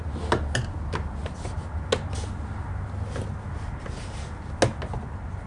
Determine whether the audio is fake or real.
real